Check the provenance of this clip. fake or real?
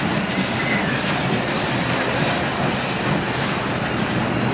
real